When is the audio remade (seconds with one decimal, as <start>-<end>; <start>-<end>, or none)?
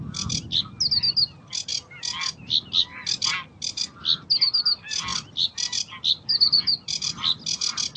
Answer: 5.1-7.2